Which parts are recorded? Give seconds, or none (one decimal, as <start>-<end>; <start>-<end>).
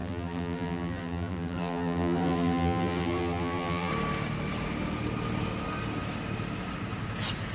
3.9-7.5